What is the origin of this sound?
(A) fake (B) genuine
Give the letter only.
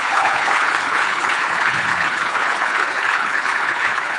A